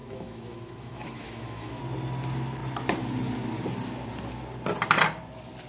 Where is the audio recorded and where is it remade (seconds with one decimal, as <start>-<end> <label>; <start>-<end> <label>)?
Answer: 0.0-1.8 remade; 1.8-5.7 recorded